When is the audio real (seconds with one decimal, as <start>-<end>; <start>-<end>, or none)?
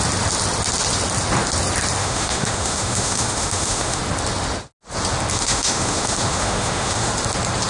0.0-2.0; 4.0-5.3; 7.1-7.7